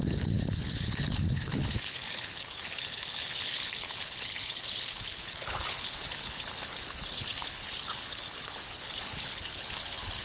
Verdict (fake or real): fake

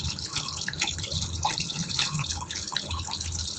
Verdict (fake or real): fake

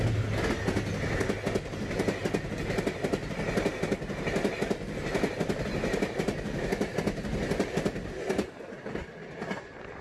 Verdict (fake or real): real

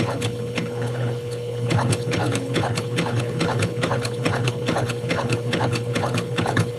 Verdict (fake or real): fake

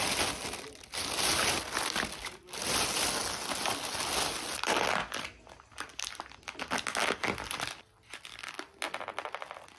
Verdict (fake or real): real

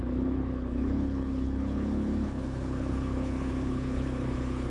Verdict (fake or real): fake